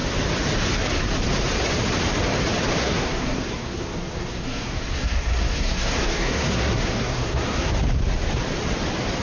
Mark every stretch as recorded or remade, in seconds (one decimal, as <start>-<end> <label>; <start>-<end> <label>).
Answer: 0.0-2.8 recorded; 2.8-7.7 remade; 7.7-9.2 recorded